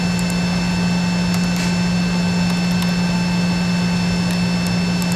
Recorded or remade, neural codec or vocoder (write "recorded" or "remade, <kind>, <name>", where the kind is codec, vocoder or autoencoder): recorded